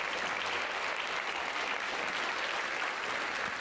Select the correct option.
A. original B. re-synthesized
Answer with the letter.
A